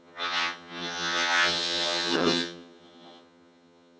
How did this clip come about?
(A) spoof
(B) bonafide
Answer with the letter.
A